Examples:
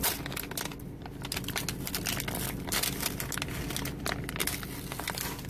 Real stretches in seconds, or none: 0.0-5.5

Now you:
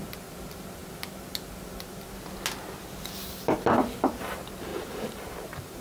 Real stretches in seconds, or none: 0.0-4.7

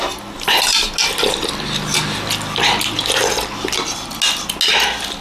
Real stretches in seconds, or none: 0.0-5.2